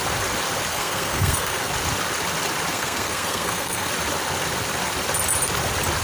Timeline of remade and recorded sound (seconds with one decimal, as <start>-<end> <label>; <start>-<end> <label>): 0.0-0.7 recorded; 0.7-1.7 remade; 1.7-2.7 recorded; 2.7-3.9 remade; 3.9-6.0 recorded